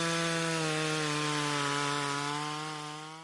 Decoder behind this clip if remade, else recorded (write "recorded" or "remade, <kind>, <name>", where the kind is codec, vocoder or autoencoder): recorded